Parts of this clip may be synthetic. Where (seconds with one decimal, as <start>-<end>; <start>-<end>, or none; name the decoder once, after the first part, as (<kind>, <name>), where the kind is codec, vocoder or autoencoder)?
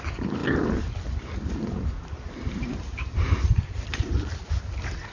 none